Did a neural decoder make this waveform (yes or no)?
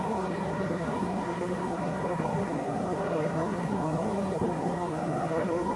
yes